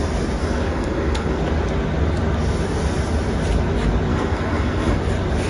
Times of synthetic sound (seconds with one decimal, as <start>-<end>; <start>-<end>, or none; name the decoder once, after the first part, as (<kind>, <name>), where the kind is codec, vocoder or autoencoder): 0.4-1.4 (codec, SNAC); 4.1-5.0

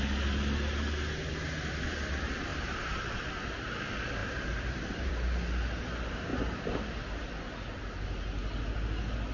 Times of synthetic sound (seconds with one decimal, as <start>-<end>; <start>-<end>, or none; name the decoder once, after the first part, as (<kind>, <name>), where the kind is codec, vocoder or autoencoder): 2.5-3.3 (vocoder, BigVGAN v2); 4.2-5.1

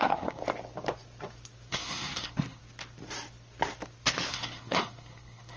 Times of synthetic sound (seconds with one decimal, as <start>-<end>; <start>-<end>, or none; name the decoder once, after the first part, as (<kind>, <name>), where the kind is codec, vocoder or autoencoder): 0.0-0.4 (codec, SNAC); 1.7-2.6; 4.3-5.6

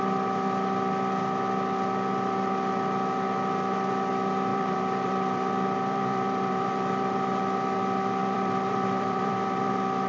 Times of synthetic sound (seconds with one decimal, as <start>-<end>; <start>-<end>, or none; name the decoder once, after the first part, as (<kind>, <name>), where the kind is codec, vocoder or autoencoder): 4.5-7.4 (vocoder, BigVGAN v2); 8.2-9.7

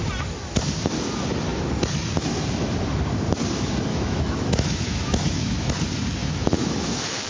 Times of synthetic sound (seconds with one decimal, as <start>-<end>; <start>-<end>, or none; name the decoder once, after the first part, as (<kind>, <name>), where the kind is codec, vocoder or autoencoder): 3.9-5.7 (autoencoder, DAC-VAE); 6.2-7.3

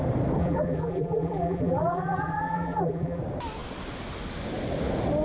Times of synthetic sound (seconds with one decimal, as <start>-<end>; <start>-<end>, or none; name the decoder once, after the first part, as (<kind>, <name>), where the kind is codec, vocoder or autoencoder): 0.4-3.2 (vocoder, BigVGAN v2)

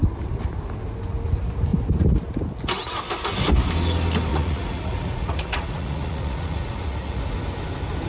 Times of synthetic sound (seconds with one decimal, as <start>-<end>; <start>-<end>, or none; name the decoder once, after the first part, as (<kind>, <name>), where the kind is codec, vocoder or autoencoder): 4.3-7.2 (vocoder, Vocos)

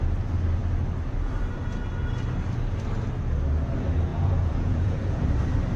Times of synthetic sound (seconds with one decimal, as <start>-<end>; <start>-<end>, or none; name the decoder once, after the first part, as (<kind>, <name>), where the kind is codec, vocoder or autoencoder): 4.1-5.2 (vocoder, Vocos)